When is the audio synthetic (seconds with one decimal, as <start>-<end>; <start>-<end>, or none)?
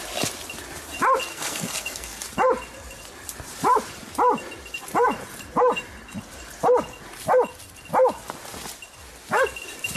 1.3-2.2